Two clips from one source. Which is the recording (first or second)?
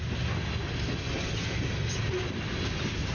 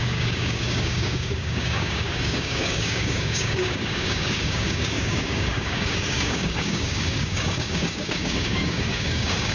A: first